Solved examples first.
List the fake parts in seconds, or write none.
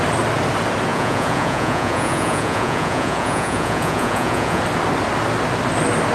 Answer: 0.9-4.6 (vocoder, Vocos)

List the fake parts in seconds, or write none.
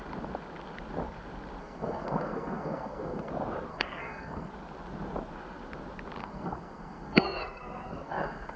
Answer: 1.6-3.3 (codec, SNAC); 3.7-4.5; 6.2-8.6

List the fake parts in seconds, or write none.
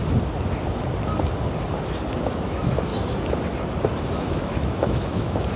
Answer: 2.4-2.9 (autoencoder, DAC-VAE); 4.3-5.6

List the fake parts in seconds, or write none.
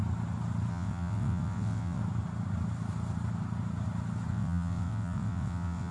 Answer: 0.7-2.0 (vocoder, WaveNeXt); 4.3-5.9